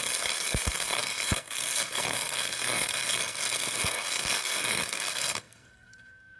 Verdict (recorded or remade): remade